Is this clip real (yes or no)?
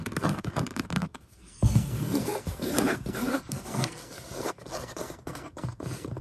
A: no